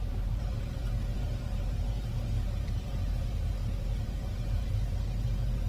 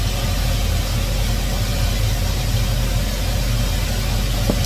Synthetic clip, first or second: first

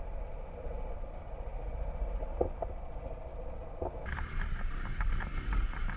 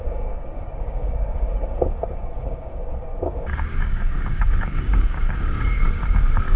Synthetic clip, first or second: second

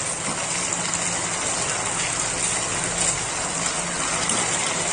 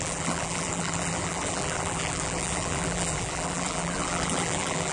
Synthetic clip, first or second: second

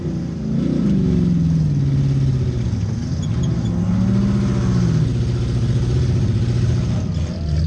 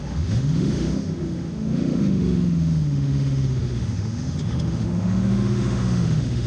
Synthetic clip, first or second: second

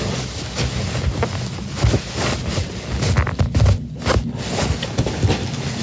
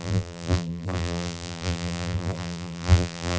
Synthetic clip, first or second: second